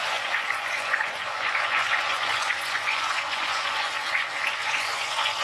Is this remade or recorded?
remade